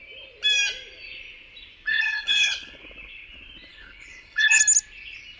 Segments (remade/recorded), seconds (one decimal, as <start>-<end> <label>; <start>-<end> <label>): 0.0-1.9 recorded; 1.9-2.8 remade; 2.8-3.7 recorded; 3.7-4.6 remade; 4.6-5.4 recorded